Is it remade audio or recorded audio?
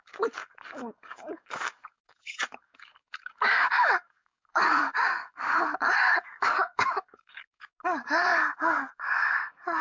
remade